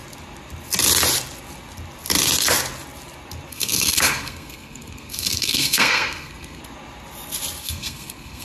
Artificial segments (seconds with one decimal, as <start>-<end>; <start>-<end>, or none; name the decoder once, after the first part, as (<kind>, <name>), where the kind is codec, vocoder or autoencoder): 3.5-6.6 (codec, SNAC); 7.6-8.4

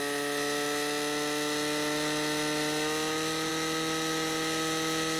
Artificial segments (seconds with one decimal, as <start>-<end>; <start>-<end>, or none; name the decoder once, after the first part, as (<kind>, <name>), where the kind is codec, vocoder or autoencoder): none

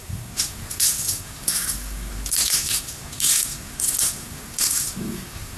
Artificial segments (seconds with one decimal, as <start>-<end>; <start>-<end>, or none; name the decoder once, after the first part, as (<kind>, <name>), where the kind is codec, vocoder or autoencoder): 0.0-5.6 (codec, SNAC)